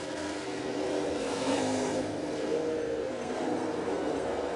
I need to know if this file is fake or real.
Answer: fake